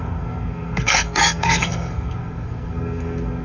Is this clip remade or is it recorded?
remade